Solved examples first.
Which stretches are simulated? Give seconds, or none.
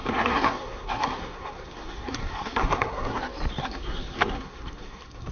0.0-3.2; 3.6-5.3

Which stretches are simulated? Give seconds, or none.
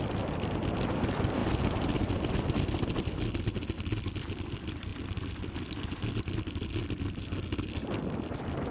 none